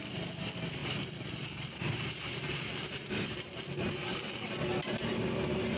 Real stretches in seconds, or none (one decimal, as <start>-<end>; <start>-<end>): 0.0-0.8; 4.3-5.8